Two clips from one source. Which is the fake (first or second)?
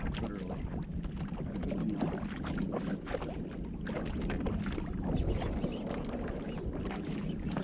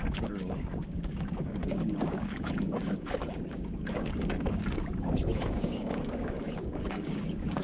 second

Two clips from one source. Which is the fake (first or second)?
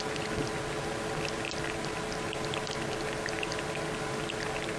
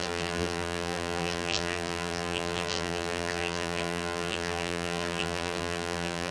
second